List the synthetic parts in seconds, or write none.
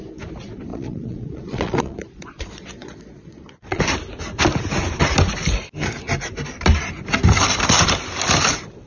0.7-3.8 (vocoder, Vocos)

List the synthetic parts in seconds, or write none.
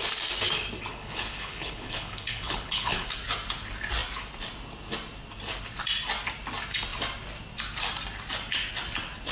0.9-3.2 (codec, HILCodec)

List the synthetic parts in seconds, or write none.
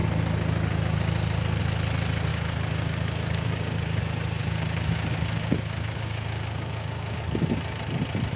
2.3-4.0 (codec, DAC); 4.4-7.2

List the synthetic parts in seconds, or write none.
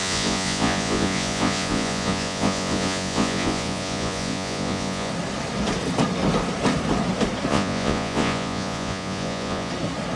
0.0-5.1 (vocoder, Vocos); 7.5-9.7